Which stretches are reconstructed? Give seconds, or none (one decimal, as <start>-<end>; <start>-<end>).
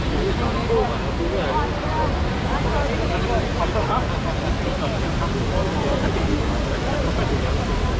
5.6-6.4